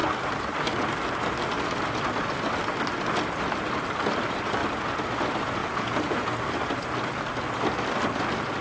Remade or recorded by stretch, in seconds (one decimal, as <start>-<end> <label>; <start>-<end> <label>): 0.0-5.6 recorded; 5.6-6.3 remade; 6.3-8.6 recorded